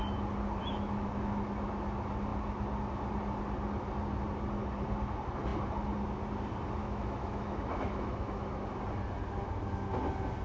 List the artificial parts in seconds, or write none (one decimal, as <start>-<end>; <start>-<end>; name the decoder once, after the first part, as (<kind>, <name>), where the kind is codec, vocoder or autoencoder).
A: 0.6-1.1 (autoencoder, DAC-VAE); 6.8-8.6

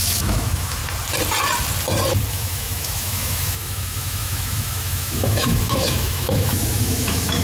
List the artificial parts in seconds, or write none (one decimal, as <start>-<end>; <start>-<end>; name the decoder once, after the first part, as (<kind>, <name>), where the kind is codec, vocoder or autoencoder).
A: 0.0-0.8 (autoencoder, DAC-VAE); 2.3-7.4